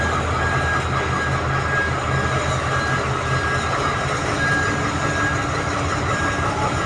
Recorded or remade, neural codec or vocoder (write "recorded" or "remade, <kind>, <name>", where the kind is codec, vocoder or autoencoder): recorded